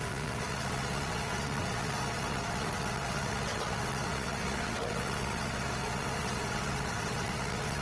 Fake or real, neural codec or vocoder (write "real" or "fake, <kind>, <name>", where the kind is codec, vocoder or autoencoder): fake, vocoder, WaveNeXt